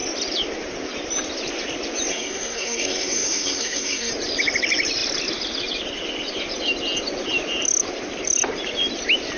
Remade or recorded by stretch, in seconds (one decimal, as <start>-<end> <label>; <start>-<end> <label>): 0.0-2.1 recorded; 2.1-4.1 remade; 4.1-9.4 recorded